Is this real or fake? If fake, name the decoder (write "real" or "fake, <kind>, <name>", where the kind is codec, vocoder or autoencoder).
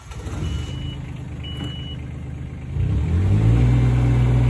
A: real